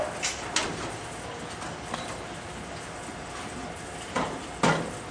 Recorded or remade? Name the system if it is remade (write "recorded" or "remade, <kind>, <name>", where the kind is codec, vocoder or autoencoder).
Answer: recorded